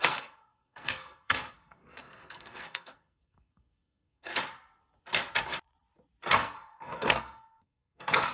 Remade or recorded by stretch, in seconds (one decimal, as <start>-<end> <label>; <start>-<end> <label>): 0.0-4.3 remade; 4.3-6.3 recorded; 6.3-8.3 remade